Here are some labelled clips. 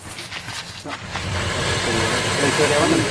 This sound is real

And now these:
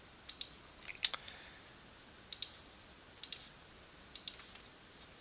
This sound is real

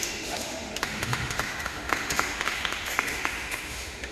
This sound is fake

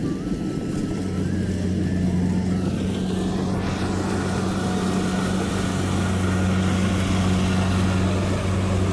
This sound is real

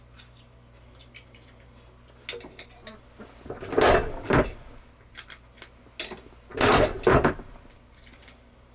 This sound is real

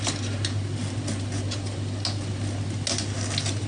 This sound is real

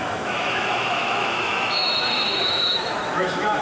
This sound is fake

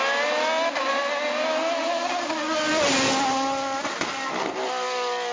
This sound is real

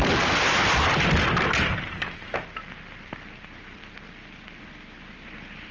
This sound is fake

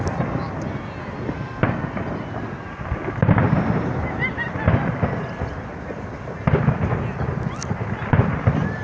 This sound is real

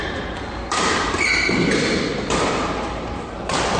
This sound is real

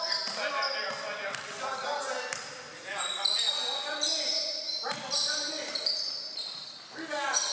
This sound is real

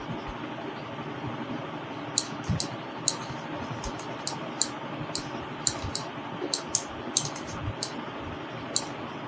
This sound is real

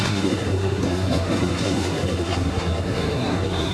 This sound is fake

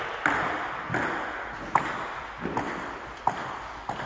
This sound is real